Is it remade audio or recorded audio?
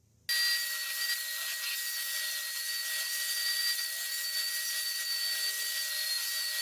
recorded